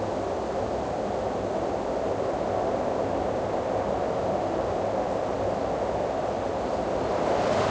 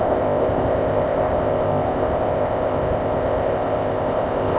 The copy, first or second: second